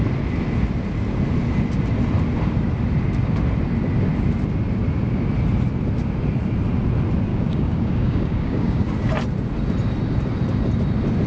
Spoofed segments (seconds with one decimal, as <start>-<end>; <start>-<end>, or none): 7.3-8.8